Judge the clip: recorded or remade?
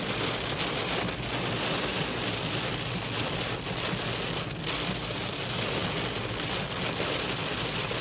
recorded